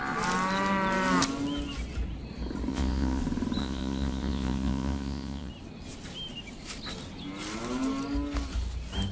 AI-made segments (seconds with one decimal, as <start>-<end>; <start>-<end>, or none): 2.7-3.2; 3.6-5.5